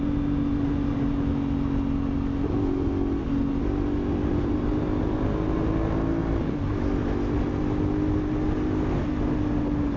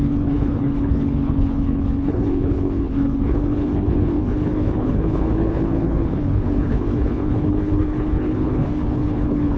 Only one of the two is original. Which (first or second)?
first